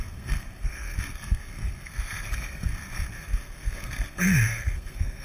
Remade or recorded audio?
remade